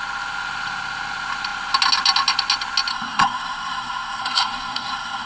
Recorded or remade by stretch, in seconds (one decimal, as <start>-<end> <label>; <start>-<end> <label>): 0.0-2.9 recorded; 2.9-5.3 remade